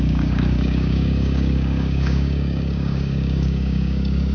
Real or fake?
fake